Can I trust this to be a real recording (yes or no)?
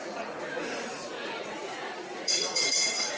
no